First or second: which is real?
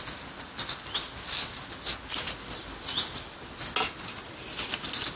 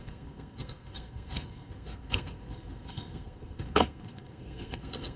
first